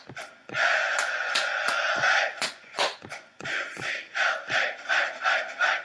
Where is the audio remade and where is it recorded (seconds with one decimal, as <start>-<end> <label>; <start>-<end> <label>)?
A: 0.0-0.4 recorded; 0.4-3.9 remade; 3.9-5.8 recorded